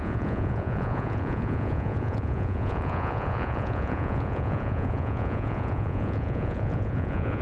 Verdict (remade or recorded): remade